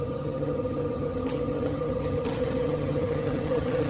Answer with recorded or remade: remade